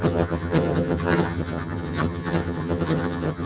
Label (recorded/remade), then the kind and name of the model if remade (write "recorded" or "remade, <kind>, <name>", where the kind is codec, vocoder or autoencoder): remade, vocoder, HiFi-GAN